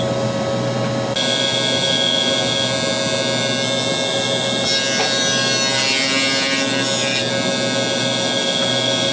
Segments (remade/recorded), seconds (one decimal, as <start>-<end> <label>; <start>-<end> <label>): 0.0-9.1 recorded